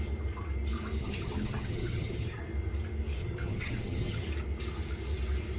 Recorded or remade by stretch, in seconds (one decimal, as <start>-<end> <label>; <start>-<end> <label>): 0.0-1.0 recorded; 1.0-2.4 remade; 2.4-3.2 recorded; 3.2-4.3 remade; 4.3-5.6 recorded